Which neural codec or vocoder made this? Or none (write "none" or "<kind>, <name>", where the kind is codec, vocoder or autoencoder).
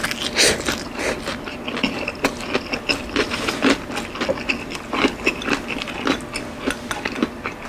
none